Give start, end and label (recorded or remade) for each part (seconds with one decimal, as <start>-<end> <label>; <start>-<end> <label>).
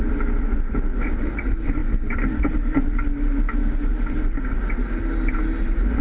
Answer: 0.0-6.0 recorded